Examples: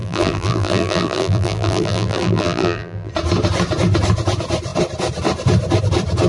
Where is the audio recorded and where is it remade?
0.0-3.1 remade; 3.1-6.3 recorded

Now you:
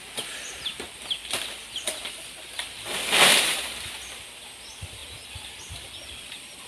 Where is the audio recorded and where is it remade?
0.0-1.2 recorded; 1.2-3.4 remade; 3.4-5.0 recorded; 5.0-6.3 remade; 6.3-6.7 recorded

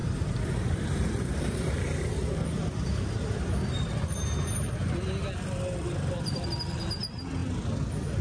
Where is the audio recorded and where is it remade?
0.0-2.1 remade; 2.1-8.2 recorded

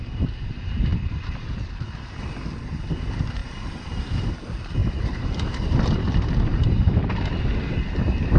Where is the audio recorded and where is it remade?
0.0-3.4 recorded; 3.4-4.3 remade; 4.3-4.8 recorded; 4.8-5.8 remade; 5.8-8.4 recorded

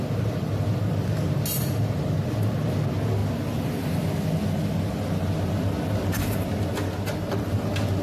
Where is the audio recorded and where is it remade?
0.0-8.0 recorded